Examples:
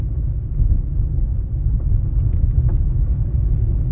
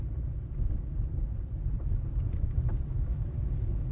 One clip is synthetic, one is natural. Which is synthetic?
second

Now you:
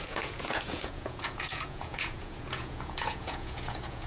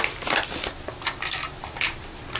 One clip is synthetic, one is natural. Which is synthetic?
first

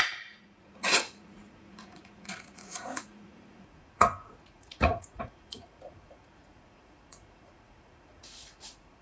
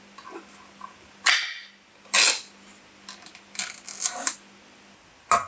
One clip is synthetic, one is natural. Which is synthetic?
first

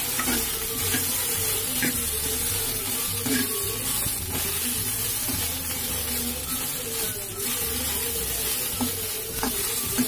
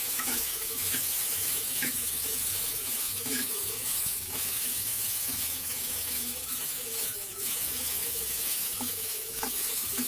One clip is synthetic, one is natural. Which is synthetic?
second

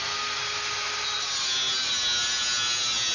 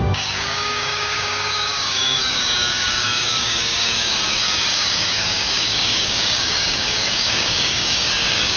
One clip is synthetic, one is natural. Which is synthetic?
second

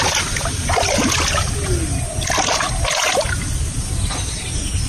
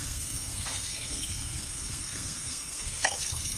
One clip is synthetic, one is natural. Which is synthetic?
second